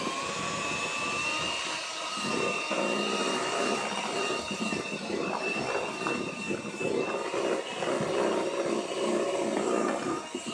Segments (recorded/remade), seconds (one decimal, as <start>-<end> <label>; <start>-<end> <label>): 0.0-10.5 recorded